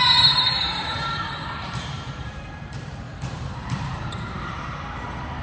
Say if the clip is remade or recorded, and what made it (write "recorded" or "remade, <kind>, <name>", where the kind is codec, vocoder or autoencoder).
remade, vocoder, BigVGAN v2